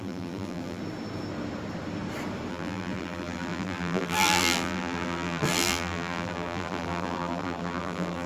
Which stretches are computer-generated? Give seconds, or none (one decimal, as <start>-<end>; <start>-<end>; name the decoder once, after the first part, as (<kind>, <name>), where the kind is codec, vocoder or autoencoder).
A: 0.0-0.8 (vocoder, BigVGAN v2); 2.5-8.3